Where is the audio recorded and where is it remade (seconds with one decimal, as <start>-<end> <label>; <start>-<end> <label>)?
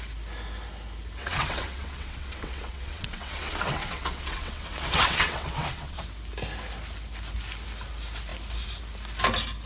0.0-1.2 recorded; 1.2-6.0 remade; 6.0-9.7 recorded